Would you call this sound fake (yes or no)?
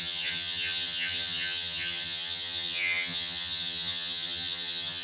yes